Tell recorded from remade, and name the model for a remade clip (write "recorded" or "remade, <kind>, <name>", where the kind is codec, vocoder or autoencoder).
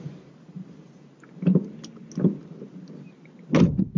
recorded